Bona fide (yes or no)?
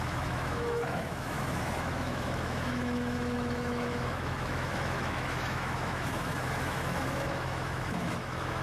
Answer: no